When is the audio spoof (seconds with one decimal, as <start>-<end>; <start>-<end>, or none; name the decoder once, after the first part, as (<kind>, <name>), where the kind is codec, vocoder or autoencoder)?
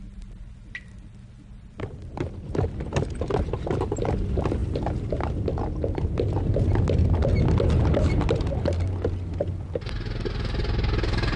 none